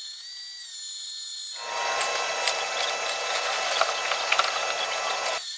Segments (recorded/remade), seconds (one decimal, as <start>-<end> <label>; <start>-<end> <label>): 0.0-5.6 recorded